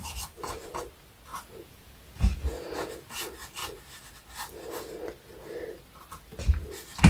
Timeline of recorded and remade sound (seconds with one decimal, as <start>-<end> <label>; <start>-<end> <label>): 0.0-1.3 recorded; 1.3-3.1 remade; 3.1-7.1 recorded

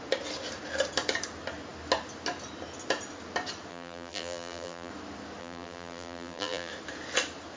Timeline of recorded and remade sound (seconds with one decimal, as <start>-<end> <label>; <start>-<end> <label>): 0.0-3.7 recorded; 3.7-4.9 remade; 4.9-5.4 recorded; 5.4-6.7 remade; 6.7-7.6 recorded

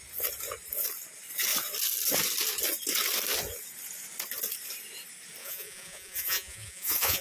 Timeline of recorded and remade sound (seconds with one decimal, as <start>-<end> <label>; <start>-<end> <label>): 0.0-5.4 recorded; 5.4-7.2 remade

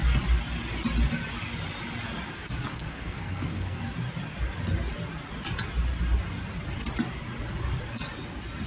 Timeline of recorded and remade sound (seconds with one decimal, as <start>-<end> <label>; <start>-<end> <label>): 0.0-2.7 recorded; 2.7-3.8 remade; 3.8-8.7 recorded

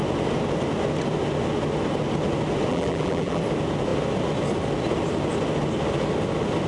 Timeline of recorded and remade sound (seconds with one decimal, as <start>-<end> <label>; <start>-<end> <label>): 0.0-2.7 recorded; 2.7-3.4 remade; 3.4-6.7 recorded

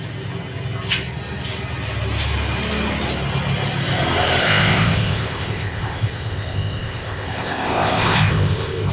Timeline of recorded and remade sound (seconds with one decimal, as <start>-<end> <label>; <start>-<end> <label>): 0.0-4.4 recorded; 4.4-8.9 remade

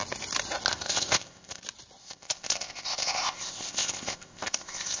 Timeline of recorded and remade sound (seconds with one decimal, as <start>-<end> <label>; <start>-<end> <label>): 0.0-0.7 recorded; 0.7-1.6 remade; 1.6-2.0 recorded; 2.0-5.0 remade